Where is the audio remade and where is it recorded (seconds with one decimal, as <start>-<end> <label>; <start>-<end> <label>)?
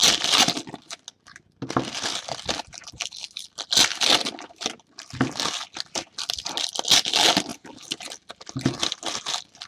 0.0-9.7 recorded